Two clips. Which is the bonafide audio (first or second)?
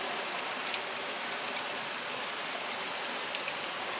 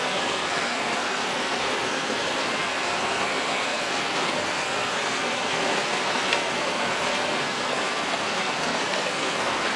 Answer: first